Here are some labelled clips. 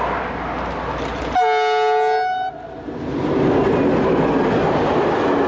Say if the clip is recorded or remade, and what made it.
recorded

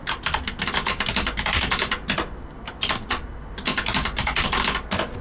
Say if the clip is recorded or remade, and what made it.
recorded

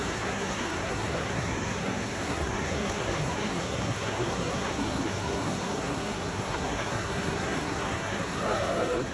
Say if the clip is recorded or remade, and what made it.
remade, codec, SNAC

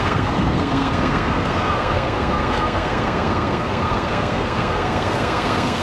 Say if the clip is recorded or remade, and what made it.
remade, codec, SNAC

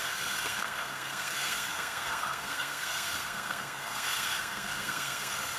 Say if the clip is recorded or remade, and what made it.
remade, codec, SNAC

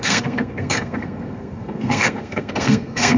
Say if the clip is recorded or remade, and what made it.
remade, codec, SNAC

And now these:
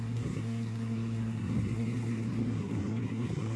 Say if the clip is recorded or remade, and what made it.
remade, codec, SNAC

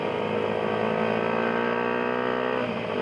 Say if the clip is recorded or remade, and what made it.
recorded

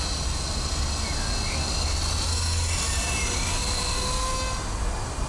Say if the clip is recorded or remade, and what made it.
recorded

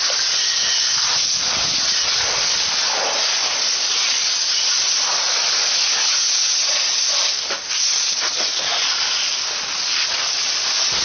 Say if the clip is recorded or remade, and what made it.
recorded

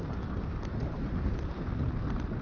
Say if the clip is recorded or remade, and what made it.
recorded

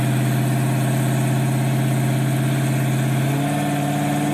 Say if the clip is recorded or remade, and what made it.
recorded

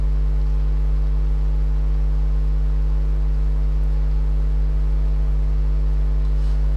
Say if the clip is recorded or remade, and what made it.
recorded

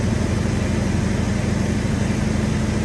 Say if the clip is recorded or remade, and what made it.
recorded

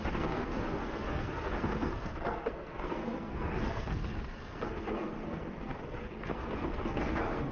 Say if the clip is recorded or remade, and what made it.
remade, codec, SNAC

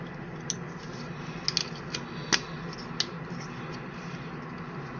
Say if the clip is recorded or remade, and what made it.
recorded